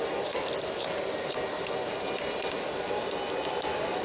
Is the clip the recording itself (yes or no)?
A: yes